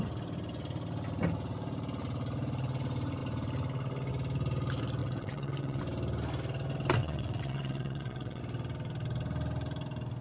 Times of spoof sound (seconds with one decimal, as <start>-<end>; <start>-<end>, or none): 5.0-5.8; 7.0-8.4